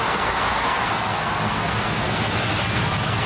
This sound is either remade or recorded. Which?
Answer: remade